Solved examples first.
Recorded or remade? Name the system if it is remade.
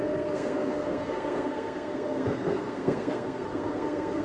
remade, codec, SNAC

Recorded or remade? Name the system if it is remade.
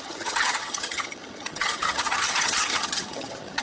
remade, vocoder, HiFi-GAN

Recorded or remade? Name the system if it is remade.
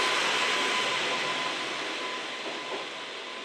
recorded